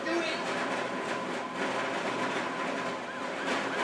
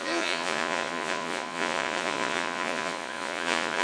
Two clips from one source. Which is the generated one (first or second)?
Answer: second